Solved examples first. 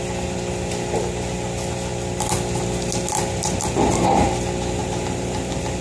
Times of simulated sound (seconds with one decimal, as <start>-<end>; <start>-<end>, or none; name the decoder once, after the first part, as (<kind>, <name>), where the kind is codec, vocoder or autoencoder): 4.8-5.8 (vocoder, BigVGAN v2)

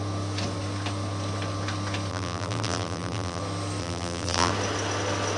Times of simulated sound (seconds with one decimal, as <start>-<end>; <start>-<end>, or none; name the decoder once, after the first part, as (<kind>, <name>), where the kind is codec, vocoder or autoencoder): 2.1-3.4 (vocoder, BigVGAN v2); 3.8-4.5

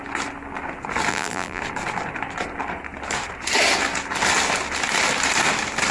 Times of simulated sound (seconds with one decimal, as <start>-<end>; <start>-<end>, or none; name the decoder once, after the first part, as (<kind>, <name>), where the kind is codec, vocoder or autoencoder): 1.1-1.6 (vocoder, BigVGAN v2)

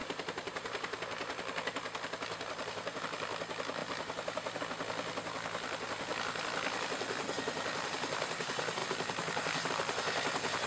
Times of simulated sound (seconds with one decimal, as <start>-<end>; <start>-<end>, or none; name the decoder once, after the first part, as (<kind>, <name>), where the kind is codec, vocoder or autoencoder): 0.0-3.0 (vocoder, BigVGAN v2); 3.8-4.6